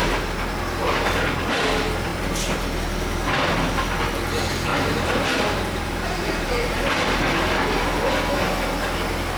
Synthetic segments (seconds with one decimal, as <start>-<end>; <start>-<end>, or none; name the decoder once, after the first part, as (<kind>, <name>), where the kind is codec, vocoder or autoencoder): 4.7-6.8 (vocoder, BigVGAN v2)